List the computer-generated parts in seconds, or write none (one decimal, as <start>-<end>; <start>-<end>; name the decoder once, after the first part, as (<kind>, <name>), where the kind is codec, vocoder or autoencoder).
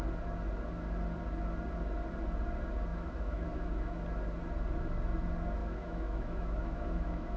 2.9-4.0 (autoencoder, DAC-VAE); 5.6-7.4